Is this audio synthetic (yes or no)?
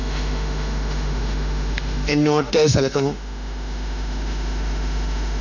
yes